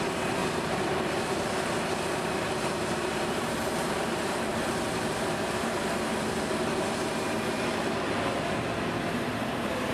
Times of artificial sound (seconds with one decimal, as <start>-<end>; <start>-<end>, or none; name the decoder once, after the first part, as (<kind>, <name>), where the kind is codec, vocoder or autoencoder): 0.0-9.9 (vocoder, BigVGAN v2)